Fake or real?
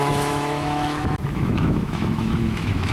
fake